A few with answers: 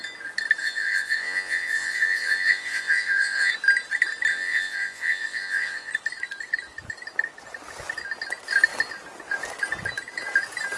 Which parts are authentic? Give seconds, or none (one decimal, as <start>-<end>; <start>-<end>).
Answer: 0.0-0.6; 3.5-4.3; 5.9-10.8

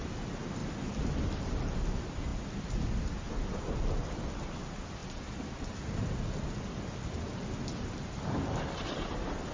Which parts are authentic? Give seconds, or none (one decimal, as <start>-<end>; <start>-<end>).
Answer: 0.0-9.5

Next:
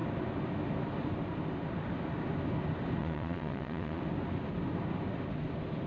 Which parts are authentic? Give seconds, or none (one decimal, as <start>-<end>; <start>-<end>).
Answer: 0.0-3.0; 4.0-5.9

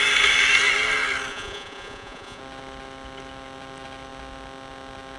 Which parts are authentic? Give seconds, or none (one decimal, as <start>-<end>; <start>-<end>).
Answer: 0.0-1.3; 2.4-5.2